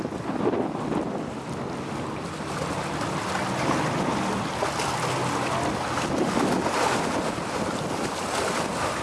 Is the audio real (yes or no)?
yes